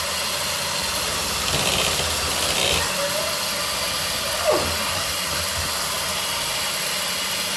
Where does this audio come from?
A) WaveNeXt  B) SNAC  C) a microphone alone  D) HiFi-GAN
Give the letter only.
C